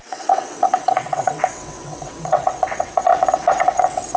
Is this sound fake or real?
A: fake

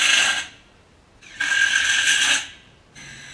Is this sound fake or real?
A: real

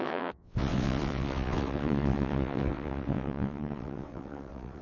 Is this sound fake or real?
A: fake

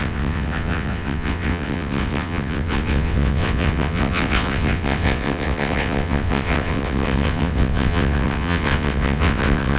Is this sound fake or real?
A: fake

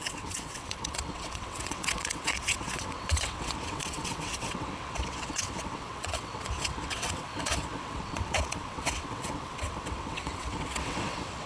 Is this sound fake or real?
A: fake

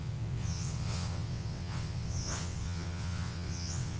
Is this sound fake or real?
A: fake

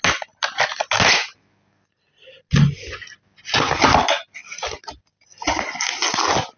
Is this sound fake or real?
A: real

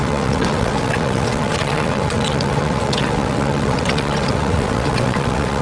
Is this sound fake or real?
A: fake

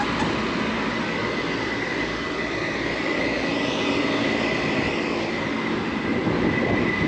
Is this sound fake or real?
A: real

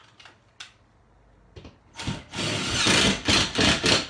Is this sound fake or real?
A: real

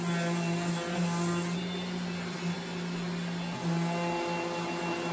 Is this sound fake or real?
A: real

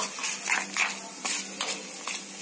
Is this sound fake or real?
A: real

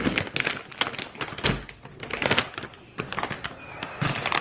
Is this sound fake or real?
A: real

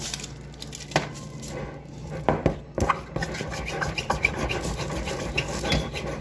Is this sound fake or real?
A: real